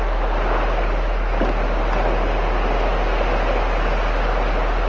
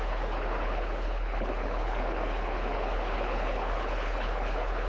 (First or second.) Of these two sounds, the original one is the first